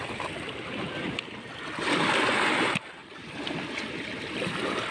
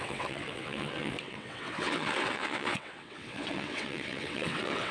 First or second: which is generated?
second